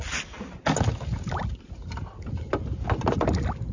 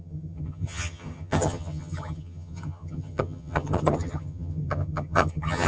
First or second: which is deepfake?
second